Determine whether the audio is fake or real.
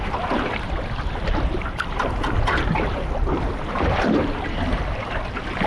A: real